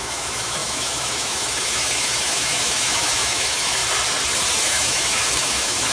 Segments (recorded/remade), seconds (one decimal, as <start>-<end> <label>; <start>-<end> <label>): 0.0-3.8 remade; 3.8-4.6 recorded; 4.6-5.9 remade